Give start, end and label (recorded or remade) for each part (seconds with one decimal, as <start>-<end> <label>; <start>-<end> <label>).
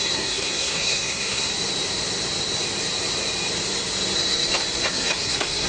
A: 0.0-1.5 remade; 1.5-4.9 recorded; 4.9-5.7 remade